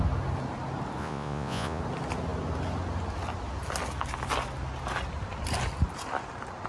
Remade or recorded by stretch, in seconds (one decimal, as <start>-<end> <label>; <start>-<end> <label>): 0.0-1.0 recorded; 1.0-1.8 remade; 1.8-6.7 recorded